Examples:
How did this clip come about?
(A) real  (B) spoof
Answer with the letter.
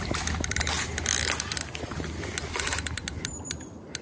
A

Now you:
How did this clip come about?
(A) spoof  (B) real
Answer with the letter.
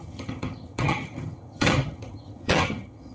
A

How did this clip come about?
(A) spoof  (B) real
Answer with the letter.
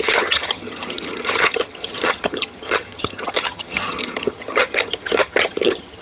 A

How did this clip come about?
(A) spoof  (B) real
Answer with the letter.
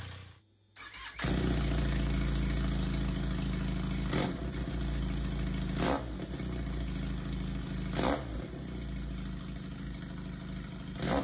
B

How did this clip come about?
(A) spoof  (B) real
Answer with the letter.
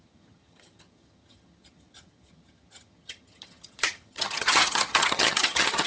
A